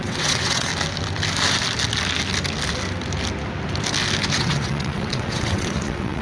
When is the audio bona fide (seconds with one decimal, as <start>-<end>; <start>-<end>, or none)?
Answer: 0.7-4.4

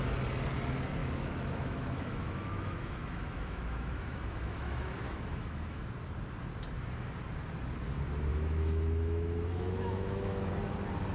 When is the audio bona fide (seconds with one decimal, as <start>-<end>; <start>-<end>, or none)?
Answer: 0.0-1.0; 5.9-8.3; 10.5-11.1

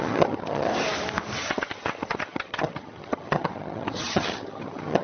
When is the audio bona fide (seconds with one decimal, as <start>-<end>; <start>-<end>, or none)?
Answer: 0.7-1.4